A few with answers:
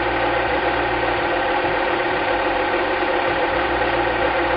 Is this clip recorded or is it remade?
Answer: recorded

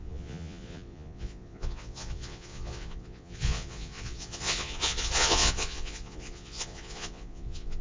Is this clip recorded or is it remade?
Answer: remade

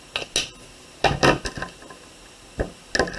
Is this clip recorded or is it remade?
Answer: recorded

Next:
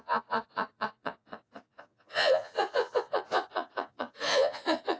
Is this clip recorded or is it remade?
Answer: remade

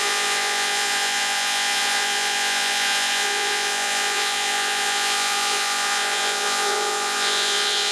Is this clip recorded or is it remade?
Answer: remade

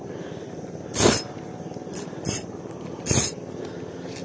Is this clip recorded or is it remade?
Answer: recorded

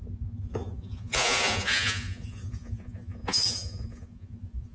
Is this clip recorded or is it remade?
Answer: remade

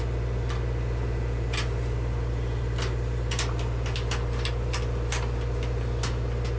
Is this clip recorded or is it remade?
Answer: recorded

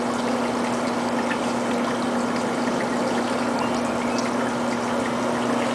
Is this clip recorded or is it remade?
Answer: recorded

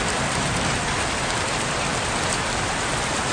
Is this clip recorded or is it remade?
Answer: recorded